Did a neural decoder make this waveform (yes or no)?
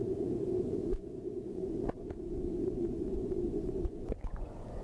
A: yes